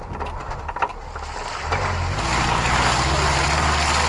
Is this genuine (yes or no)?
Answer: yes